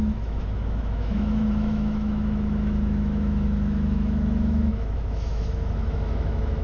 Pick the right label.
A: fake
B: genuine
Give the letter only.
A